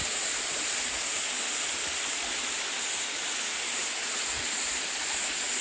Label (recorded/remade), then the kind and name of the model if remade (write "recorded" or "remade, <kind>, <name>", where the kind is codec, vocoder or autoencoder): recorded